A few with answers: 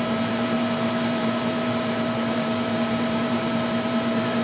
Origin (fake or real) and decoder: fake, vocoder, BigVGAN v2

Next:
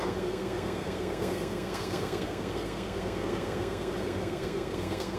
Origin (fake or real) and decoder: fake, codec, SNAC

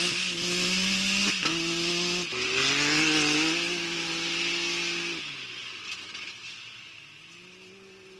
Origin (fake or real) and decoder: real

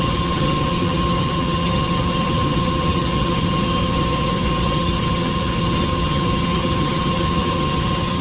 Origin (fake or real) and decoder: fake, vocoder, HiFi-GAN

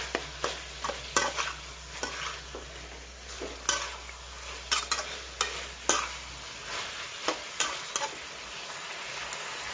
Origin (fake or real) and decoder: real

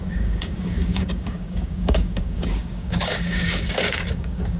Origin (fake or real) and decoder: fake, codec, DAC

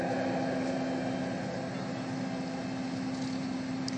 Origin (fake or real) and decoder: real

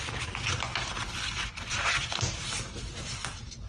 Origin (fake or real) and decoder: real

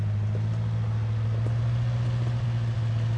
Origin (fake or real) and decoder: real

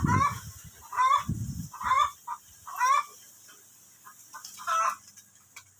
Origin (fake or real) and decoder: real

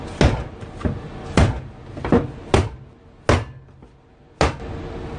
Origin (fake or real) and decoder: real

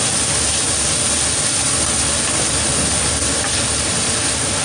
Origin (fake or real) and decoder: real